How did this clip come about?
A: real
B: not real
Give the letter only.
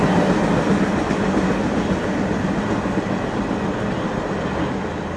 A